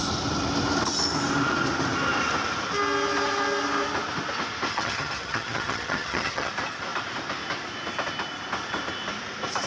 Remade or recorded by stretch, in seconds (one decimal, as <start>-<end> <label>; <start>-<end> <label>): 0.0-4.7 recorded; 4.7-6.5 remade; 6.5-9.7 recorded